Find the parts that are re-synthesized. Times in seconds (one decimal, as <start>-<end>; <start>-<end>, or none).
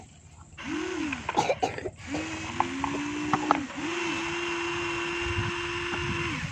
none